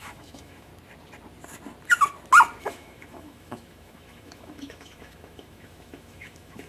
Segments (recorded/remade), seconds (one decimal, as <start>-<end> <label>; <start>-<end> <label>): 0.0-0.7 remade; 0.7-2.6 recorded; 2.6-6.7 remade